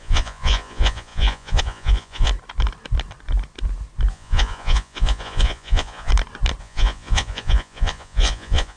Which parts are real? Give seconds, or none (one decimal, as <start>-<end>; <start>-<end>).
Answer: 2.3-4.1; 6.1-6.6